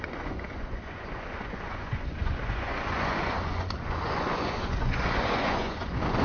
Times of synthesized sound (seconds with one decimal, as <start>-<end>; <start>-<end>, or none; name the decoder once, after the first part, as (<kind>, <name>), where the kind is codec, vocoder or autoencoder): 0.0-6.2 (vocoder, Vocos)